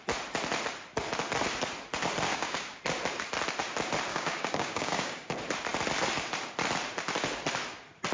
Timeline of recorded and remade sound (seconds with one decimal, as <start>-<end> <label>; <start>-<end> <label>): 0.0-2.3 recorded; 2.3-2.8 remade; 2.8-4.1 recorded; 4.1-5.3 remade; 5.3-8.1 recorded